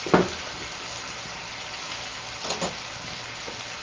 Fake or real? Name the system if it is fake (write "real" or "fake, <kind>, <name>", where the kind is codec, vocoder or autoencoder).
real